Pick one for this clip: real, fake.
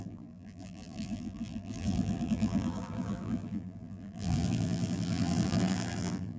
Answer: fake